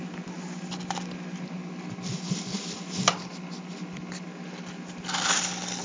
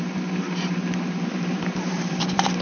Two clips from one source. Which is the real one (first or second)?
first